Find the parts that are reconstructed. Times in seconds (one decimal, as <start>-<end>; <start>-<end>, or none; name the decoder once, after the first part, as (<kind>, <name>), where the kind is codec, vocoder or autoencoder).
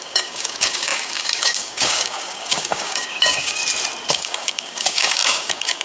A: 0.0-3.6 (codec, DAC); 4.1-5.8